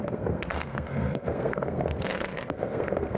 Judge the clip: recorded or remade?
remade